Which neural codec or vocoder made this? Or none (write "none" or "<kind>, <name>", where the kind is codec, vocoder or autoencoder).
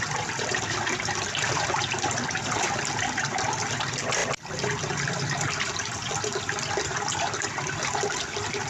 vocoder, BigVGAN v2